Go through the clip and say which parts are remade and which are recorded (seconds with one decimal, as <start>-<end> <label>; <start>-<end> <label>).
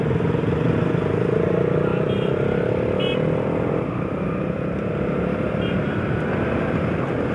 0.0-7.3 recorded